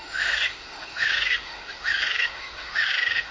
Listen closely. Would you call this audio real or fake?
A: fake